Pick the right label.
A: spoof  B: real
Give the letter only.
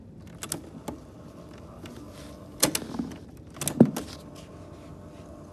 B